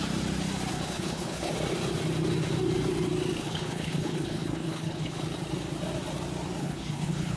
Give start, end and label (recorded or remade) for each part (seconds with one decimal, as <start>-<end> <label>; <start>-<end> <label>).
0.0-0.7 recorded; 0.7-1.5 remade; 1.5-3.4 recorded; 3.4-5.2 remade; 5.2-6.6 recorded; 6.6-7.4 remade